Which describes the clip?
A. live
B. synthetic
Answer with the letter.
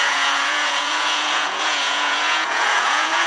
B